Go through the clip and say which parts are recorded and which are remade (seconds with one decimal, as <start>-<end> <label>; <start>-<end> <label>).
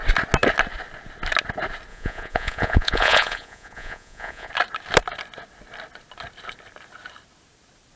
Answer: 0.0-1.9 recorded; 1.9-4.5 remade; 4.5-8.0 recorded